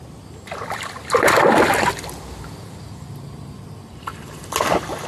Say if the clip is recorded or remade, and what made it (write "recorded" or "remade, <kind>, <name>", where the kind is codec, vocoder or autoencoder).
recorded